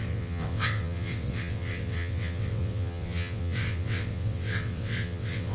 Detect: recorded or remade remade